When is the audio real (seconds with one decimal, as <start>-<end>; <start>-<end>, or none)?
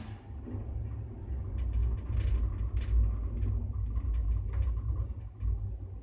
0.0-6.0